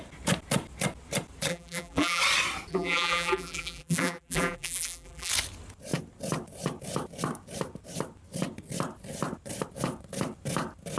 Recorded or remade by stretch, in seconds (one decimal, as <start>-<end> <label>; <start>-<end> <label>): 0.0-1.5 recorded; 1.5-2.2 remade; 2.2-2.7 recorded; 2.7-5.3 remade; 5.3-11.0 recorded